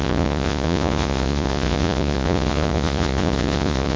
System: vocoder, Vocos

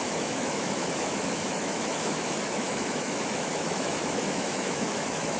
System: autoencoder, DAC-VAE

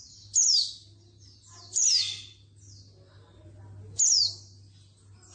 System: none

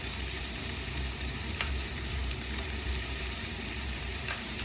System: vocoder, BigVGAN v2